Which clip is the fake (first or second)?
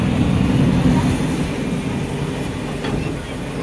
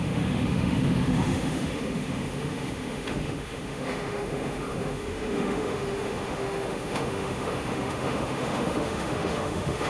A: second